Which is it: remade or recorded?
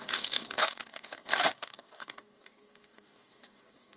remade